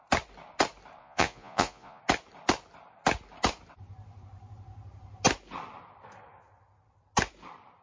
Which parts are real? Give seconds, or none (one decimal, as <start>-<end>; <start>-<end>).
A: 0.0-1.0; 2.0-7.8